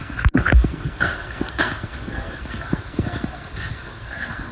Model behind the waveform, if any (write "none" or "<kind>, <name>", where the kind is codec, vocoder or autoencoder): codec, SNAC